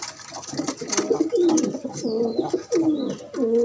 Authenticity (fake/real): real